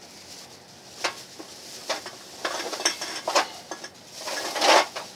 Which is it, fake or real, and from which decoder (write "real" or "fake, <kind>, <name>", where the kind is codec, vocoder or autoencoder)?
real